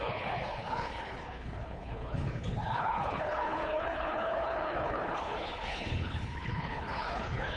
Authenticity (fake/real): fake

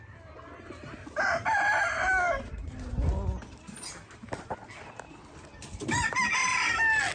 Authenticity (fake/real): real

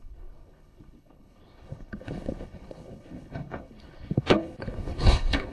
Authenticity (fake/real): fake